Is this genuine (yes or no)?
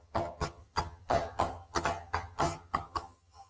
no